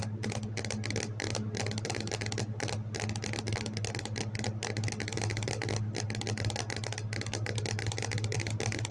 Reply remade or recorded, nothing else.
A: recorded